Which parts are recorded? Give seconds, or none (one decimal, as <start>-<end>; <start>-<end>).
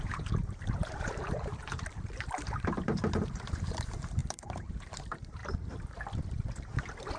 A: 5.4-7.2